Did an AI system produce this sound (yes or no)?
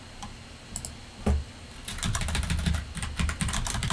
no